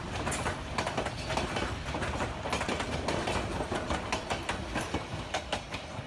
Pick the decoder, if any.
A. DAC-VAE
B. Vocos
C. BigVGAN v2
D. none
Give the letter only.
D